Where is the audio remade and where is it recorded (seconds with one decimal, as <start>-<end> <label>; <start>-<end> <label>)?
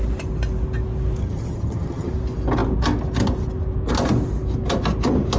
0.0-1.2 recorded; 1.2-2.1 remade; 2.1-5.4 recorded